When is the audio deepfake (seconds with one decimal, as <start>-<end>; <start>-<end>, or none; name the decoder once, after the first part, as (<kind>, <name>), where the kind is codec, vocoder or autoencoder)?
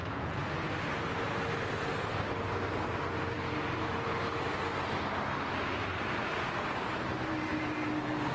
0.0-0.7 (vocoder, Vocos)